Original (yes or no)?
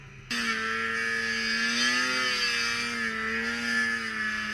yes